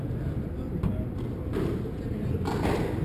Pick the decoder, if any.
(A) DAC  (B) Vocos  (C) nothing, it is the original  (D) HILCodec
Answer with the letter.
C